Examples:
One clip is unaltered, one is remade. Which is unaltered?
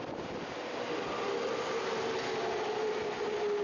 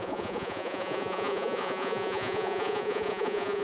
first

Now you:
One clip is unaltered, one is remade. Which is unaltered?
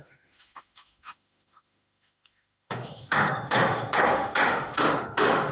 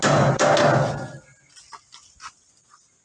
second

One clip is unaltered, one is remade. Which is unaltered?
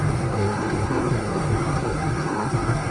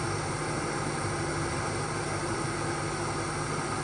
second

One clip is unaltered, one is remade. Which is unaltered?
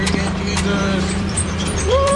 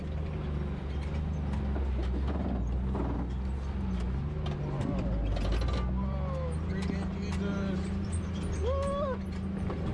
second